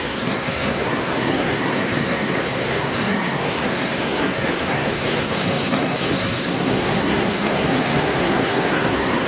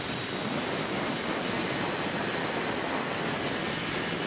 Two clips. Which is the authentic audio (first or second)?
second